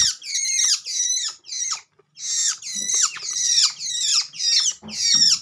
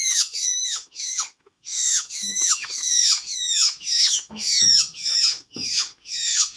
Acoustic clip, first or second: first